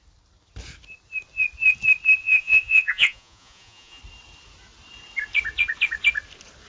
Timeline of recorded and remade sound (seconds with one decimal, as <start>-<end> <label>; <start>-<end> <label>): 0.0-2.2 recorded; 2.2-4.0 remade; 4.0-6.7 recorded